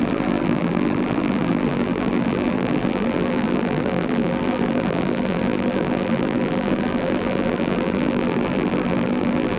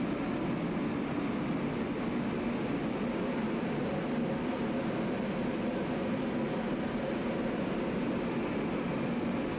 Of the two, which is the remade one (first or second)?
first